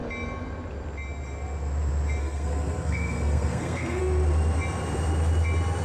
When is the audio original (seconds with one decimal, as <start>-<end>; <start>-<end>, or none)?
0.0-2.2; 4.0-5.8